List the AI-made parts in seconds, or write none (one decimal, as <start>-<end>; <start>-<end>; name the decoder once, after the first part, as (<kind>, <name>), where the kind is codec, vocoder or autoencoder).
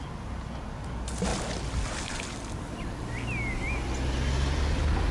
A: none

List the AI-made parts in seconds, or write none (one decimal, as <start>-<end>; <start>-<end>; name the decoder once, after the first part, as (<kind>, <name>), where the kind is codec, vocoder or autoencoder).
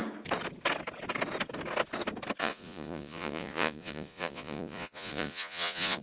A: 2.4-6.0 (vocoder, Vocos)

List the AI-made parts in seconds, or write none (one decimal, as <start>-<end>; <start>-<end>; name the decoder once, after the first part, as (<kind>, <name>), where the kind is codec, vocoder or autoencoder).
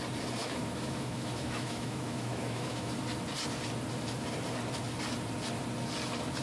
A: 0.4-2.9 (autoencoder, DAC-VAE)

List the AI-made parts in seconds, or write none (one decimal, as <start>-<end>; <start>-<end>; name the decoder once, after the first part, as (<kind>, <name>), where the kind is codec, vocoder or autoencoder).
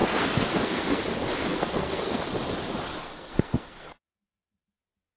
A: 0.0-1.0 (codec, SNAC); 1.4-2.2; 3.0-4.8